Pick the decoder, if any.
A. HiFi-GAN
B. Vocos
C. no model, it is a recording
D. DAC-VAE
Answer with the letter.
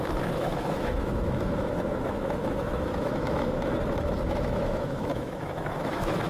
D